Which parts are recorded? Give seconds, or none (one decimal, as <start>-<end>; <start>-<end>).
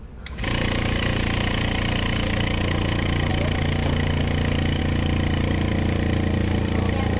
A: none